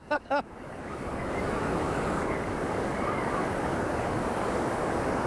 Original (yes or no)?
no